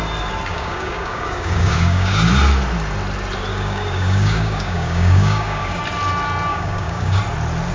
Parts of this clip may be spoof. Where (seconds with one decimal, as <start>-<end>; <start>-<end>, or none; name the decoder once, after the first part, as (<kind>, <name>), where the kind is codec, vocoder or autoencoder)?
0.5-2.3 (codec, DAC); 3.5-5.8; 6.5-7.2

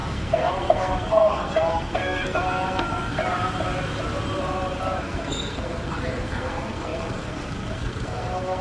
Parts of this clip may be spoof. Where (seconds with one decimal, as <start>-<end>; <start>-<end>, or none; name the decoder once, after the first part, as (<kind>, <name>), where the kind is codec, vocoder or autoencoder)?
0.0-3.2 (codec, SNAC); 5.0-8.6